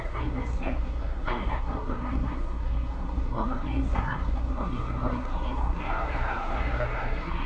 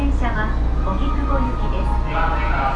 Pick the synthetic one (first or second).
first